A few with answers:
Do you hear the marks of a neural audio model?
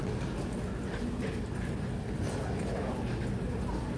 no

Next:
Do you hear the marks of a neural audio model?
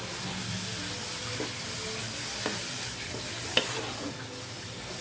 no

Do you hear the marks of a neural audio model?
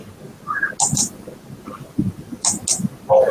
no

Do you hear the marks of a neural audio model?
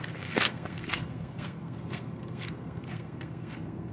yes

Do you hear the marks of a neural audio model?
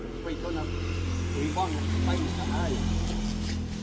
no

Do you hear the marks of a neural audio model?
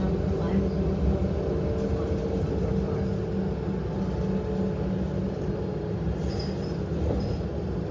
no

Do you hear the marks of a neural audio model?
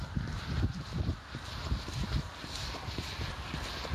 no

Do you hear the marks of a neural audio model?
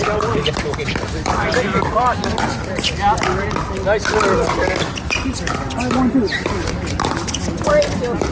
no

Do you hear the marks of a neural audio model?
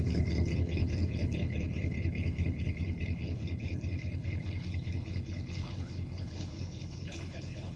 yes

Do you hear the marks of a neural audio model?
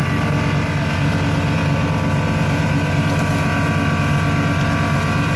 no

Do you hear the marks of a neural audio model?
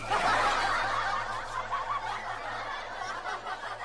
no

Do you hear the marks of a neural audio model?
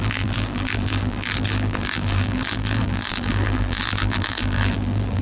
yes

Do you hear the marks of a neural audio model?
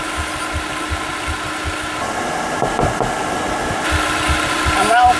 no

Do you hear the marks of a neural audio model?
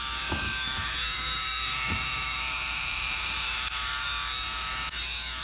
yes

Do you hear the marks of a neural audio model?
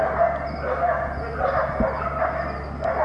no